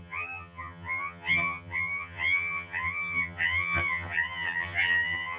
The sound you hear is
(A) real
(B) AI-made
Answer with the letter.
B